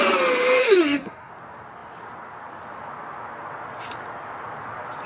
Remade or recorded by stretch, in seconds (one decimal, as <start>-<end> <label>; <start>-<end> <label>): 0.0-0.6 recorded; 0.6-1.3 remade; 1.3-5.1 recorded